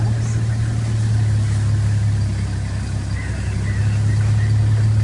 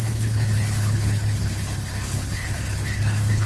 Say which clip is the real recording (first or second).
first